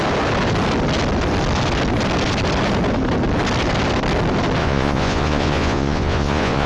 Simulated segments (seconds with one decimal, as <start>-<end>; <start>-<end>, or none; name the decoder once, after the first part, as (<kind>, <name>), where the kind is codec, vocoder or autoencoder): 4.6-6.7 (vocoder, Vocos)

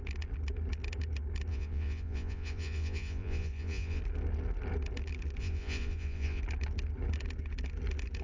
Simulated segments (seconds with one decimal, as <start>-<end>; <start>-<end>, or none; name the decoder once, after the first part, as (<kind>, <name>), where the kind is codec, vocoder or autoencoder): 1.5-4.0 (vocoder, Vocos); 5.4-6.4